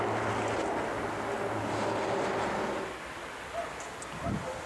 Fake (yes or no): no